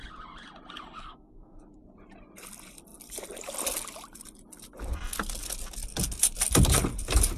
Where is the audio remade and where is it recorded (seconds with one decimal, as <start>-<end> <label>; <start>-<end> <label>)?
0.0-1.0 recorded; 1.0-1.6 remade; 1.6-7.4 recorded